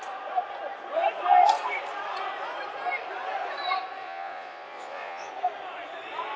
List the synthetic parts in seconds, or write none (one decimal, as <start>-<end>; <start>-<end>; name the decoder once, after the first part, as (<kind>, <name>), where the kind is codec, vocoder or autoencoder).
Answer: 4.0-5.3 (vocoder, Vocos)